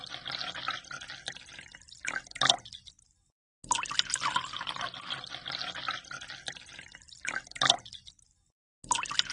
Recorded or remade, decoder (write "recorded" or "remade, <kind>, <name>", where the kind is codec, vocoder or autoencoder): recorded